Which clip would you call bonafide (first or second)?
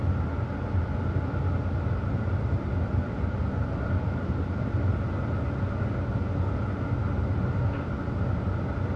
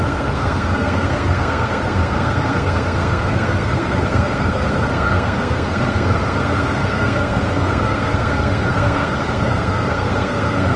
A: first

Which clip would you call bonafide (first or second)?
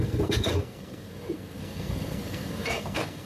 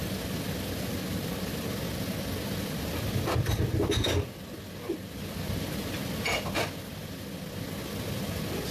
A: second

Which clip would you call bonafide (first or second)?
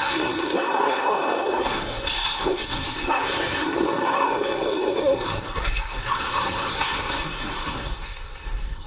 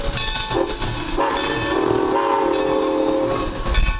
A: second